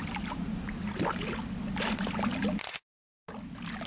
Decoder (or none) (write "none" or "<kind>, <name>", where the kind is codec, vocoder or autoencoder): none